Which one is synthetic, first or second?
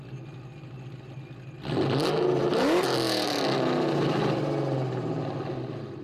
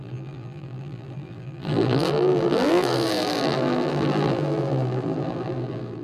second